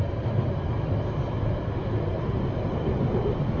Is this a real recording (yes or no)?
yes